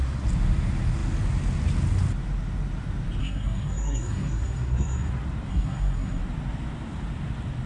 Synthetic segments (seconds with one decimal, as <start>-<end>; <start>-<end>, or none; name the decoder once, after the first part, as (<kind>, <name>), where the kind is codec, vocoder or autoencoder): 3.2-5.1 (codec, SNAC); 5.5-6.2